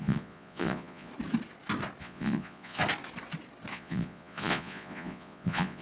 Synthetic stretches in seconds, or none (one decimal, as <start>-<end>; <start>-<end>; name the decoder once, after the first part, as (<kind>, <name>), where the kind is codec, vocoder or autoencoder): 0.0-1.1 (vocoder, Vocos); 2.0-2.8; 3.7-5.8